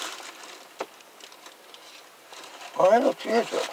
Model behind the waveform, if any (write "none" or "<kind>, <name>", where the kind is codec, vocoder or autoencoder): none